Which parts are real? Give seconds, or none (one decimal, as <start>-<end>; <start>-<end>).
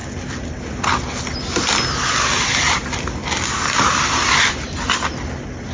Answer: 0.0-5.7